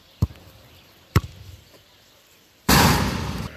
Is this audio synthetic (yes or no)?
yes